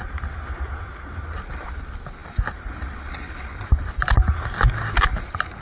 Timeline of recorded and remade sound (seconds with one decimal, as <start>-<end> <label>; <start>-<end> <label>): 0.0-5.6 recorded